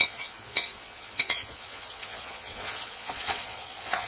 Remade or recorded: remade